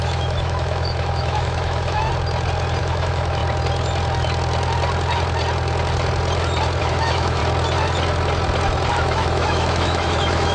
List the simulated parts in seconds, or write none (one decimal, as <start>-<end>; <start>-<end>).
0.0-2.1; 2.8-3.4; 6.8-7.4; 8.9-10.5